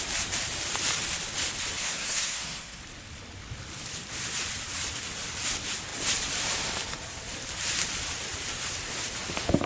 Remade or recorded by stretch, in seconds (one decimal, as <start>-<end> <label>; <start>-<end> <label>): 0.0-1.8 recorded; 1.8-2.8 remade; 2.8-9.7 recorded